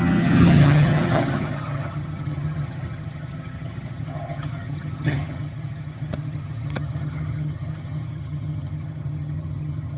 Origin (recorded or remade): remade